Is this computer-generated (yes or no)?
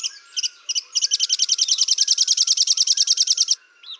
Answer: no